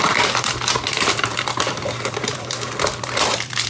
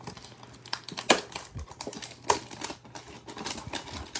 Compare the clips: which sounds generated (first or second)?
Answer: first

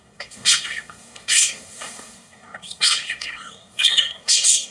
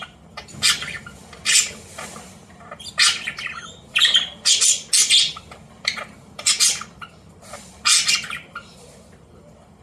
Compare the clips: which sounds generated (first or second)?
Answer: first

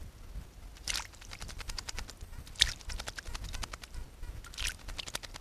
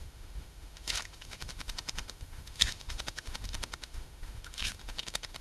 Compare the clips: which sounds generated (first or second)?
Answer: second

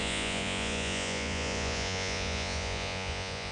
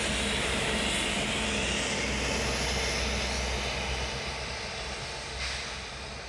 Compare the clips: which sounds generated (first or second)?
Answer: first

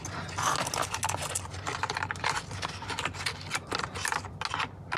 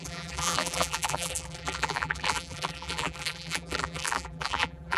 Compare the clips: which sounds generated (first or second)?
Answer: second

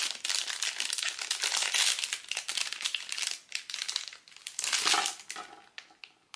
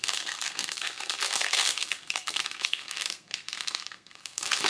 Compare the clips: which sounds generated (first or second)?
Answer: second